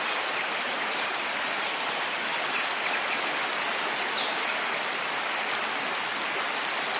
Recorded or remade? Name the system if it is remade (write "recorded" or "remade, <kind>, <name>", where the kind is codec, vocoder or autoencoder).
recorded